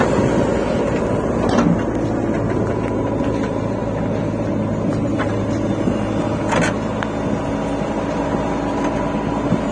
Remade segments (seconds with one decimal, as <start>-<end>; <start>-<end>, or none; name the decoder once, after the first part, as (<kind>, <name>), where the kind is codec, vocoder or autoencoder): none

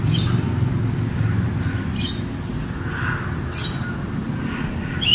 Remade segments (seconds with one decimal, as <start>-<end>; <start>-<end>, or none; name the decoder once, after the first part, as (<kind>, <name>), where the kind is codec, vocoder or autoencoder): none

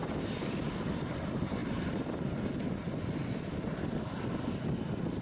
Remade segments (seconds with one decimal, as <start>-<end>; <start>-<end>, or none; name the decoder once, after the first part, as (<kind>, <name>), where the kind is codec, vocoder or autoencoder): none

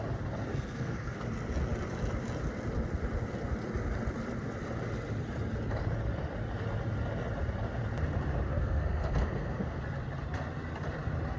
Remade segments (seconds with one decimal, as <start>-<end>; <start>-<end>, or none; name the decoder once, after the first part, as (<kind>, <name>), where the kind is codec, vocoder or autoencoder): 0.5-1.2 (codec, SNAC); 8.5-9.8

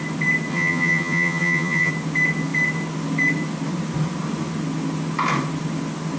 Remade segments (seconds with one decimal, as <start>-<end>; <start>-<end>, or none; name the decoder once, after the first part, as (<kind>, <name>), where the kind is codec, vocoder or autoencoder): 0.5-1.9 (vocoder, HiFi-GAN)